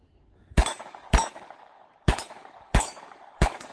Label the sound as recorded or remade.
remade